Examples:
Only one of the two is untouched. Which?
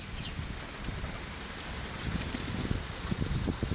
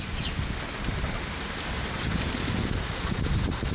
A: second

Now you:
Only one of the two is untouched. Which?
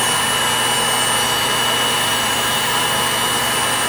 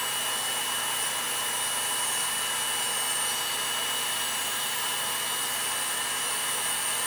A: first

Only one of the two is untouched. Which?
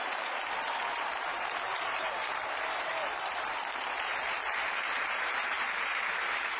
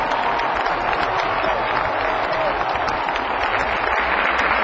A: second